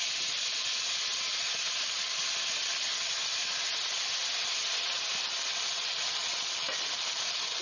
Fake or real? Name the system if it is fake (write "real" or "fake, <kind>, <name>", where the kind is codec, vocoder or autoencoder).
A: real